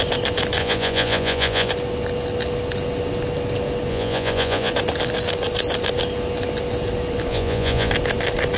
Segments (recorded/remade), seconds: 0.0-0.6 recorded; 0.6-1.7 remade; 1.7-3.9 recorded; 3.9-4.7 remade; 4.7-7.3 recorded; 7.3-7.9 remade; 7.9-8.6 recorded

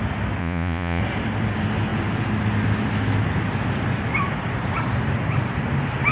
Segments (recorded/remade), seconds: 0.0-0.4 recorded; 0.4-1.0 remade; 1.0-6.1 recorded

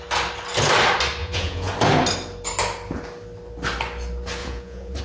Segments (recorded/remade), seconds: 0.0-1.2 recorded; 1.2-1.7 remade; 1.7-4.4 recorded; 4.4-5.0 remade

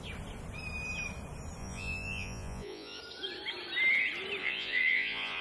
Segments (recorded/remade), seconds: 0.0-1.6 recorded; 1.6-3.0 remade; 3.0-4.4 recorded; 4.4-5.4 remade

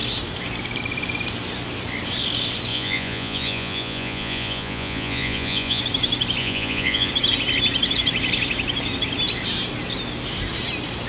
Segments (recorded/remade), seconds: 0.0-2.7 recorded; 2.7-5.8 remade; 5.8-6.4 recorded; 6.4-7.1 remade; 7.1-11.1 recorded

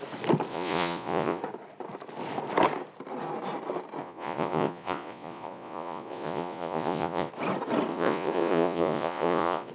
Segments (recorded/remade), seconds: 0.0-0.5 recorded; 0.5-1.4 remade; 1.4-4.0 recorded; 4.0-7.3 remade; 7.3-7.9 recorded; 7.9-9.7 remade